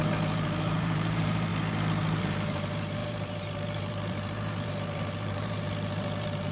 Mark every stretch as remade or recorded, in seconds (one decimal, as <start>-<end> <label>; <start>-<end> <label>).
0.0-1.5 remade; 1.5-2.2 recorded; 2.2-6.5 remade